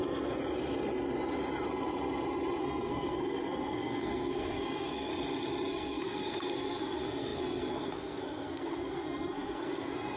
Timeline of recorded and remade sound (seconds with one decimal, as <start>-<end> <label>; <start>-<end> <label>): 0.0-2.6 recorded; 2.6-5.1 remade; 5.1-5.7 recorded; 5.7-10.2 remade